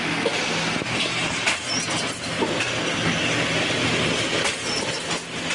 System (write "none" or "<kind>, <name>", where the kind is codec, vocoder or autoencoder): none